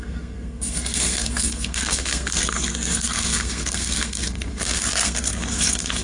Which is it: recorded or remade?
remade